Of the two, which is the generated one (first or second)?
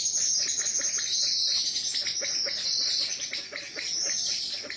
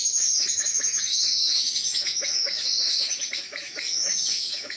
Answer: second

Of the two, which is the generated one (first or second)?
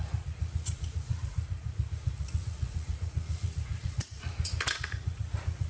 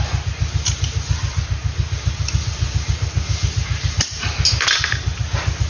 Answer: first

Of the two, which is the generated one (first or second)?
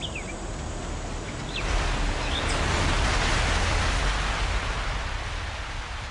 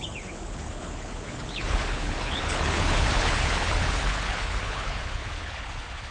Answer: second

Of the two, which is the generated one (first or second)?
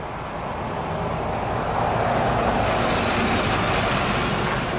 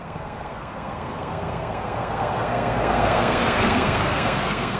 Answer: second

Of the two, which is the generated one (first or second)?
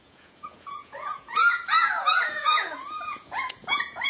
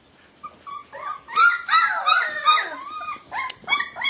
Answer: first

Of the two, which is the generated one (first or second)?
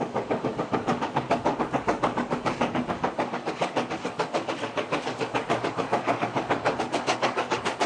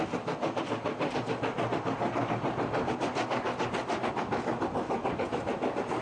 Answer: first